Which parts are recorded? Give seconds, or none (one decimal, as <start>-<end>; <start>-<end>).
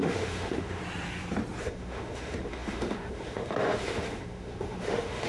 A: 0.8-1.6